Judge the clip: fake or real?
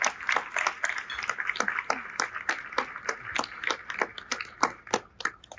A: real